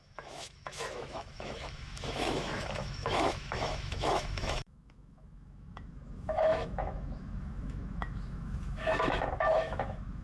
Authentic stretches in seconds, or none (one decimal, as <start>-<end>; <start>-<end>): none